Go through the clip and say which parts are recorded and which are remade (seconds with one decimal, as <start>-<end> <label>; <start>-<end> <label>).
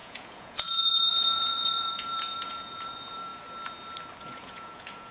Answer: 0.0-3.3 remade; 3.3-4.2 recorded; 4.2-5.1 remade